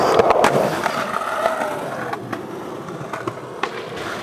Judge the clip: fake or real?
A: real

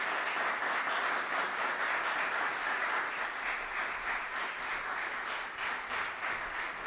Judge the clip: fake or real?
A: real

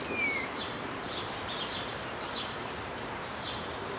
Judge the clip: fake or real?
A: fake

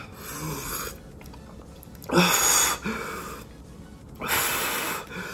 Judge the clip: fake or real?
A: real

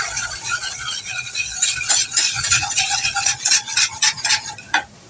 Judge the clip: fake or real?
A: fake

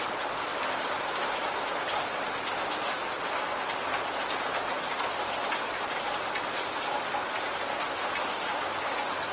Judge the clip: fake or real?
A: real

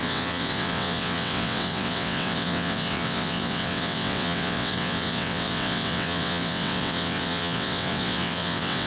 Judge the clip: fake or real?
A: fake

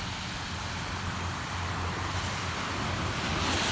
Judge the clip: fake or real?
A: real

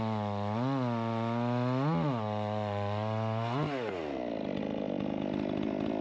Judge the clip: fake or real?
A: real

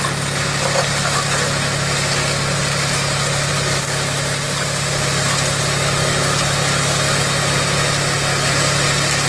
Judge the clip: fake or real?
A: real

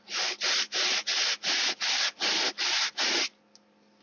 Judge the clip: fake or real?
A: real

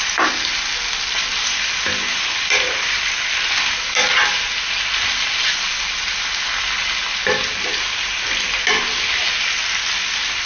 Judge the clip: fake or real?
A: real